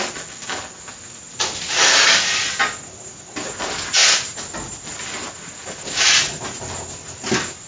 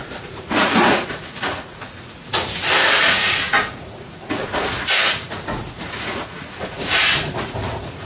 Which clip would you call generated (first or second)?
second